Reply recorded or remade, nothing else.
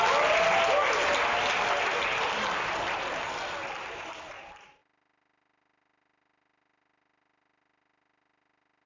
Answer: recorded